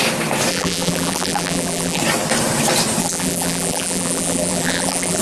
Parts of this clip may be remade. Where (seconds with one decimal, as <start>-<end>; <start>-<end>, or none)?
0.5-2.0; 3.0-5.2